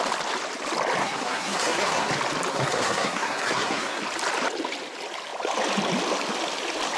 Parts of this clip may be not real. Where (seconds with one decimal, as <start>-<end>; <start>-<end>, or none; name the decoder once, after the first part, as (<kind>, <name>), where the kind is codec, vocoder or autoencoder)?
1.0-2.1 (codec, SNAC); 2.5-4.0